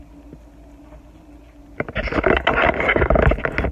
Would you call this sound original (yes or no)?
yes